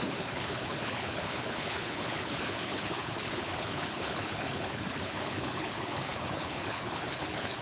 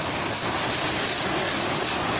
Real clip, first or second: second